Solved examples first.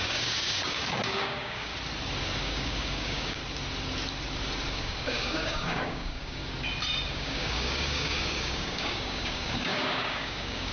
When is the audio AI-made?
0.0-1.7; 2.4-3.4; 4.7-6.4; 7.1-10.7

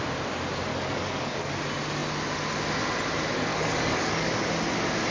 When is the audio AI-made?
0.7-1.5; 3.5-4.3

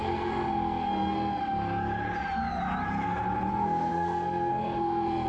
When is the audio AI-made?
0.0-1.4; 3.5-5.3